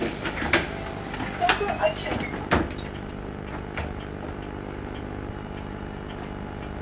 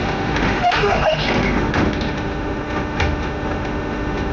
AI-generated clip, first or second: second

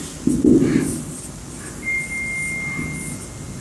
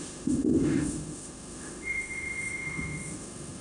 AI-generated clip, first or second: second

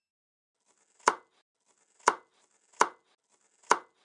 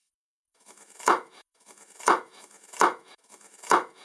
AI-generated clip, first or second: second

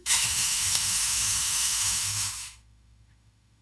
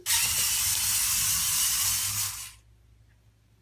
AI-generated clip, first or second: first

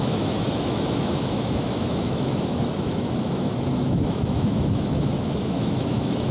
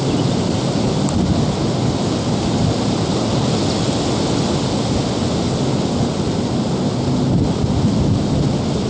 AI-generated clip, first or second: first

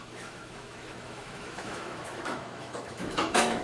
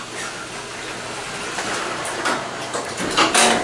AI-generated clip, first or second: first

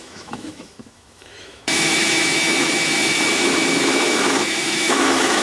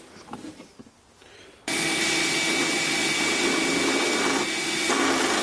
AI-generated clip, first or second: first